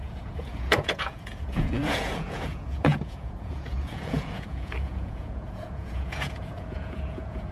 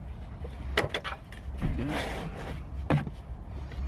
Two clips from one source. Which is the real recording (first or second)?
second